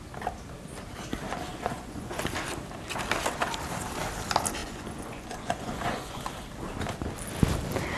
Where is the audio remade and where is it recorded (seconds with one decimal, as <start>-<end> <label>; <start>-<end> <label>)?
0.0-1.5 recorded; 1.5-2.2 remade; 2.2-4.6 recorded; 4.6-6.2 remade; 6.2-8.0 recorded